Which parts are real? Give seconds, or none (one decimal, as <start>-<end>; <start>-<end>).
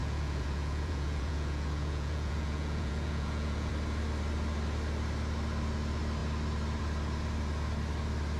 3.7-8.4